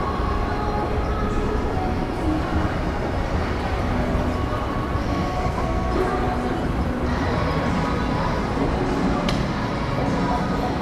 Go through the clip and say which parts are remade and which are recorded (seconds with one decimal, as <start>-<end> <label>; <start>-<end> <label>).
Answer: 0.0-5.0 recorded; 5.0-5.9 remade; 5.9-10.8 recorded